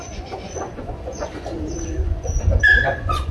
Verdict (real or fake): fake